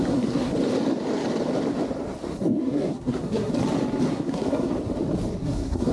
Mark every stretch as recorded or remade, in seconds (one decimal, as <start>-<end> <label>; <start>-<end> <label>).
0.0-0.5 remade; 0.5-2.4 recorded; 2.4-3.5 remade; 3.5-4.1 recorded; 4.1-4.7 remade; 4.7-5.4 recorded; 5.4-5.9 remade